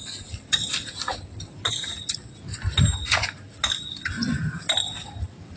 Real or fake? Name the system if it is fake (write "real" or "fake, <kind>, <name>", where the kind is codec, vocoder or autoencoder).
real